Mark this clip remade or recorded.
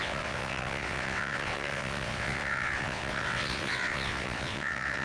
remade